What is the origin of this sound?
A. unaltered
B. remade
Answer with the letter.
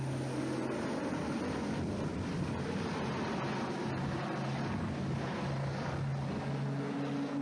A